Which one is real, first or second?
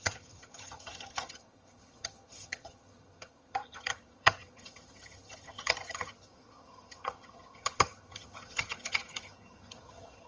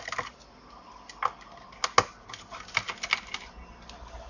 second